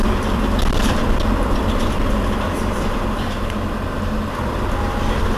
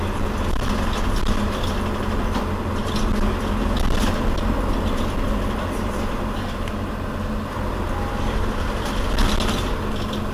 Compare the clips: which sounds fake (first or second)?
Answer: first